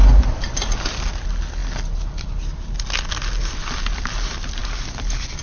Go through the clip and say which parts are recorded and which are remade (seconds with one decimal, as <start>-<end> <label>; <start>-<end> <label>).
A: 0.0-0.5 remade; 0.5-5.4 recorded

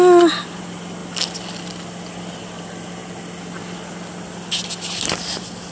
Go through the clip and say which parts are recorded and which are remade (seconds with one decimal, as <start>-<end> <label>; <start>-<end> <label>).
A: 0.0-5.7 recorded

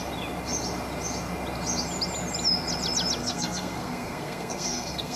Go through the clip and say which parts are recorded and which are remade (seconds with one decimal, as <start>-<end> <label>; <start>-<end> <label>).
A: 0.0-3.2 recorded; 3.2-5.2 remade

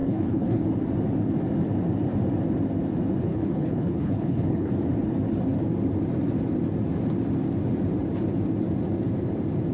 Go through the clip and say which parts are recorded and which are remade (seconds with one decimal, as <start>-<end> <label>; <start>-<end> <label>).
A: 0.0-0.6 remade; 0.6-3.3 recorded; 3.3-4.7 remade; 4.7-9.7 recorded

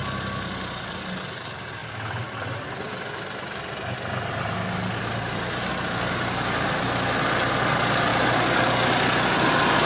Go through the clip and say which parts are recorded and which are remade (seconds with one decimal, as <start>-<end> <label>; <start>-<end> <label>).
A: 0.0-9.9 recorded